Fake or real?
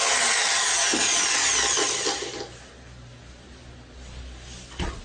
real